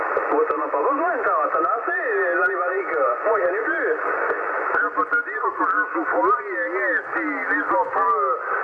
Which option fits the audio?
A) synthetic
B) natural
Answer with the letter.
B